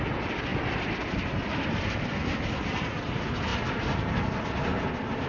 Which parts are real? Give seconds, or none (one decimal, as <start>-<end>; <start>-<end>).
0.0-5.3